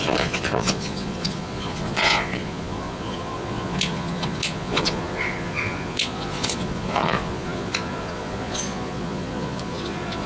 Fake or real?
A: fake